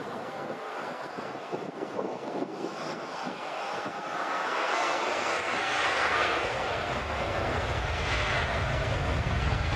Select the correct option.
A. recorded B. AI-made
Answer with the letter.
B